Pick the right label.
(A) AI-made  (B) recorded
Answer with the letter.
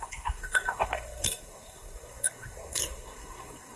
A